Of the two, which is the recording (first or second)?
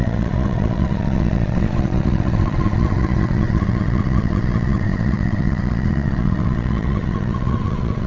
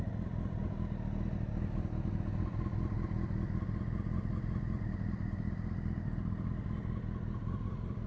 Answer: second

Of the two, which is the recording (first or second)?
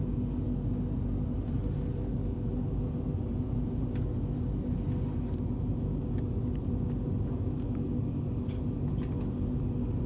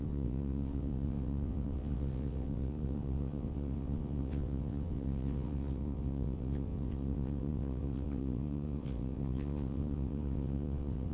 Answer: first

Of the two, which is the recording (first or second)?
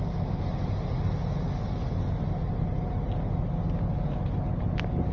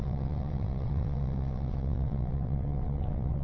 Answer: first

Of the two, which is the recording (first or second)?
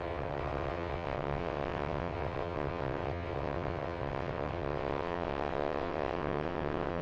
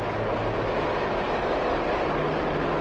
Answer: second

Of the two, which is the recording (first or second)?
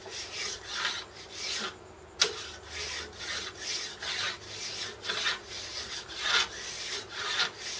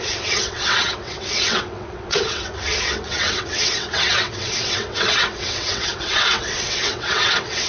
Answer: first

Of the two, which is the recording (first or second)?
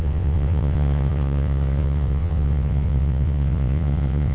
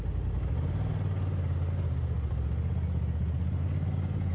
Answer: second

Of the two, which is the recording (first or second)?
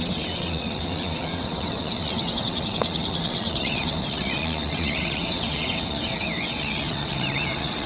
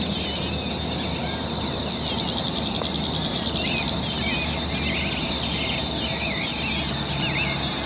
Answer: second